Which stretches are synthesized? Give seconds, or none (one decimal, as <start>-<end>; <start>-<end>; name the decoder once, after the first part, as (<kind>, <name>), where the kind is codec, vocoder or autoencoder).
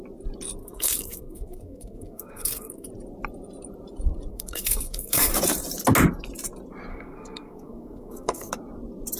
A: 0.6-2.9 (codec, SNAC); 4.3-5.3; 6.9-8.5